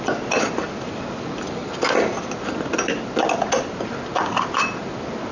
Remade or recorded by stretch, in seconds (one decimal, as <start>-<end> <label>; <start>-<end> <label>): 0.0-5.3 recorded